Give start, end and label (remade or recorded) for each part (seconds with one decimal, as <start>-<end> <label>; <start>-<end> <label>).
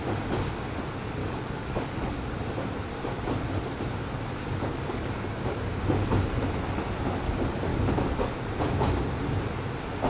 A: 0.0-1.2 recorded; 1.2-2.1 remade; 2.1-4.7 recorded; 4.7-5.6 remade; 5.6-7.7 recorded; 7.7-8.3 remade; 8.3-10.1 recorded